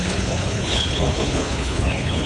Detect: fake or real fake